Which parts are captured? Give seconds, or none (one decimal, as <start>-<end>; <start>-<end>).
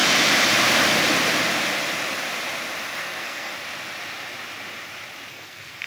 0.0-3.0; 3.5-5.3